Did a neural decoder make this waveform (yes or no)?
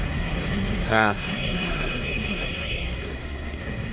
yes